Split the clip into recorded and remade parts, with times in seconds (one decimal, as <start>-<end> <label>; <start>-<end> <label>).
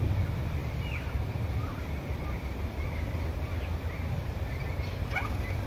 0.0-0.6 recorded; 0.6-2.3 remade; 2.3-5.7 recorded